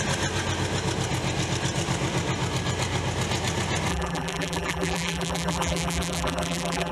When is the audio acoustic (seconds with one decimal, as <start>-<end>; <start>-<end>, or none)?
0.0-3.9